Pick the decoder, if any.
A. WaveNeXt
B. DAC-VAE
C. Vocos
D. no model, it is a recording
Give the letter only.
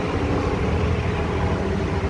D